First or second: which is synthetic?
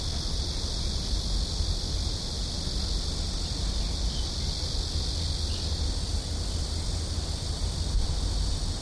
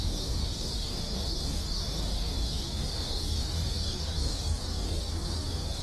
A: second